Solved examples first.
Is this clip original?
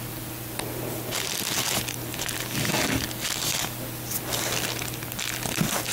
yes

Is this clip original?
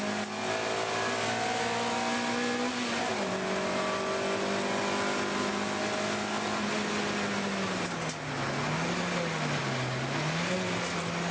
yes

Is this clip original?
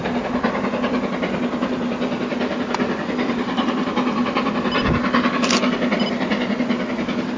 yes